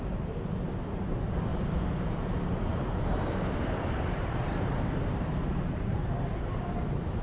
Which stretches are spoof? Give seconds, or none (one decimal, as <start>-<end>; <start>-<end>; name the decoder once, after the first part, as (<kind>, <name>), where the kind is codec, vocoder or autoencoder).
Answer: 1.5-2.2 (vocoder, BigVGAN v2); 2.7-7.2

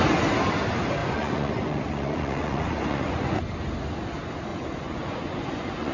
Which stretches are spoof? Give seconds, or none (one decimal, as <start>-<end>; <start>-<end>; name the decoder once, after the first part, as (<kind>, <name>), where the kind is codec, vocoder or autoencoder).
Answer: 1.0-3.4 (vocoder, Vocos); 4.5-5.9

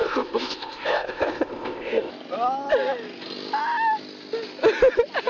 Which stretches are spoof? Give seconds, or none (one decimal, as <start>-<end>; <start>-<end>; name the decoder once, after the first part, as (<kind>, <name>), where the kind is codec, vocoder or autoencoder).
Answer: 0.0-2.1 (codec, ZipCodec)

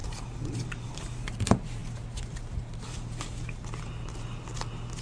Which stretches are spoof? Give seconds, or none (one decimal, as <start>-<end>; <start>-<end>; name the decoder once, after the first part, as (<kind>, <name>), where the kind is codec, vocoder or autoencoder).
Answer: 0.0-1.3 (vocoder, BigVGAN v2)